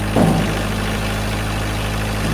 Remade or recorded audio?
recorded